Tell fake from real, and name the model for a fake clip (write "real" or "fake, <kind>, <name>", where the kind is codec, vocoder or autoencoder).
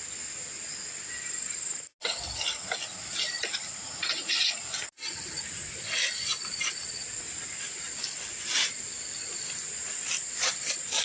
real